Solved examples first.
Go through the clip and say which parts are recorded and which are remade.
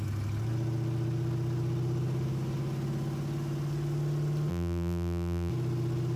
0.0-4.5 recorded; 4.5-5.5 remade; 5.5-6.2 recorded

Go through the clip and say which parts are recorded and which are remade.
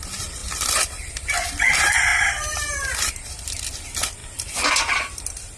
0.0-5.6 remade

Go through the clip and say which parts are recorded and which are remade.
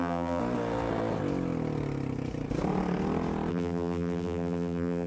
0.0-0.4 remade; 0.4-3.5 recorded; 3.5-5.1 remade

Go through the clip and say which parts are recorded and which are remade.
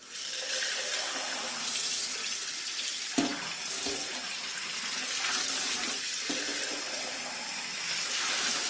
0.0-0.9 remade; 0.9-2.0 recorded; 2.0-3.3 remade; 3.3-4.4 recorded; 4.4-8.7 remade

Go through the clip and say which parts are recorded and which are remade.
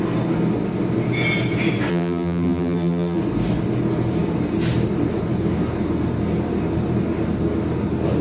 0.0-1.9 recorded; 1.9-3.2 remade; 3.2-8.2 recorded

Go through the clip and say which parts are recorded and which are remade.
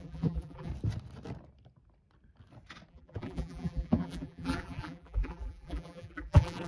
0.0-0.7 remade; 0.7-2.9 recorded; 2.9-6.7 remade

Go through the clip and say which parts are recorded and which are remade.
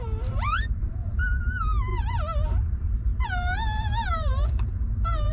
0.0-1.4 remade; 1.4-1.9 recorded; 1.9-5.3 remade